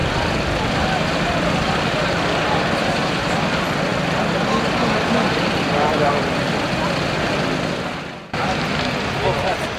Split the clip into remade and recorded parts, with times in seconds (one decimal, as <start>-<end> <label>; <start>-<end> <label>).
0.0-9.8 recorded